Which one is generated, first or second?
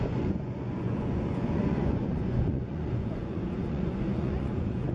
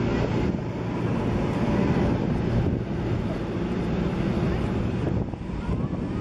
first